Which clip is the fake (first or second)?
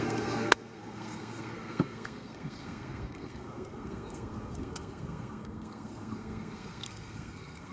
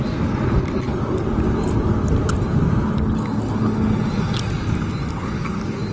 first